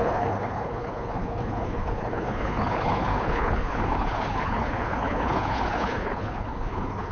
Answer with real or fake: fake